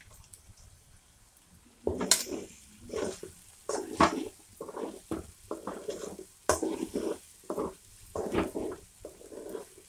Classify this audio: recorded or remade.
recorded